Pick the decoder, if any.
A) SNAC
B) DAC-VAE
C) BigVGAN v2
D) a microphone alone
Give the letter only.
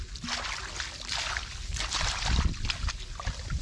D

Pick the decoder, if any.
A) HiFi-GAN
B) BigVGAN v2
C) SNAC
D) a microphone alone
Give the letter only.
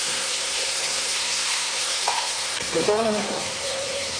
C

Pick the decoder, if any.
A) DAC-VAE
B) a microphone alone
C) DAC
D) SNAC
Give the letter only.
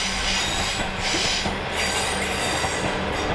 B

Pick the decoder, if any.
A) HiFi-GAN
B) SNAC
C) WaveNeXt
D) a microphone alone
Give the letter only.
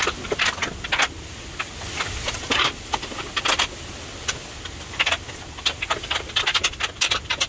D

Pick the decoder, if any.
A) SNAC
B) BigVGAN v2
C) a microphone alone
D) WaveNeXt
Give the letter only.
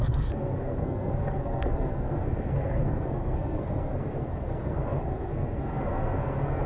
A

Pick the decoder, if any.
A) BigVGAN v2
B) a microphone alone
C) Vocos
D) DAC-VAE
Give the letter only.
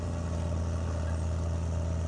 B